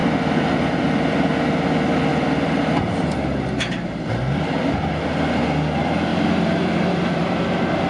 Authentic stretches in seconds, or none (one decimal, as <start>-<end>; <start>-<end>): 0.0-2.1; 4.7-6.1; 7.4-7.9